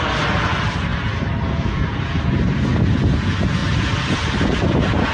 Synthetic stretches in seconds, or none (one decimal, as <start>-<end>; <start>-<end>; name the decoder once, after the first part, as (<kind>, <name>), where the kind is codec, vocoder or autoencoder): none